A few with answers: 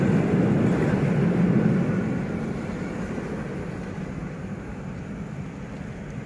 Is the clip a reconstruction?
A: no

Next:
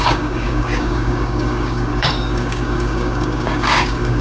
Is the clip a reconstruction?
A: yes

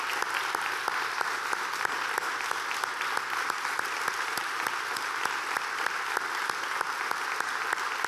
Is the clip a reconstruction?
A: no